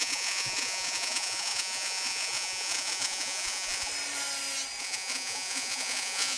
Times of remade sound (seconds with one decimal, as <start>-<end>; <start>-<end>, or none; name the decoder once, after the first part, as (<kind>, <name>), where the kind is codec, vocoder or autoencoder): 0.0-3.9 (vocoder, Vocos); 4.8-6.4